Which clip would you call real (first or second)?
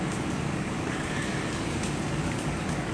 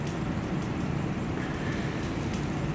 second